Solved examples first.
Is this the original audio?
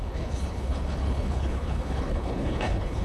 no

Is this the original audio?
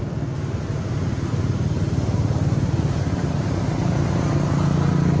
yes